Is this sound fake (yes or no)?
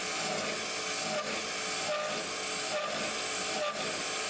no